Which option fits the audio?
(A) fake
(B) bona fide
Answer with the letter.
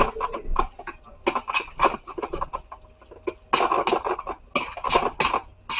B